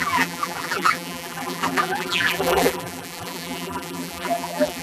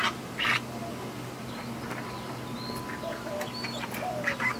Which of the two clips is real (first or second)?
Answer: second